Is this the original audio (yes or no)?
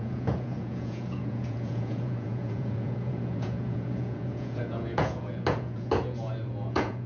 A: no